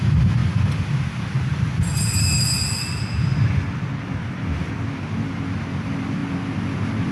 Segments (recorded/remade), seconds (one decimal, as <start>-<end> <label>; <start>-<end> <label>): 0.0-7.1 recorded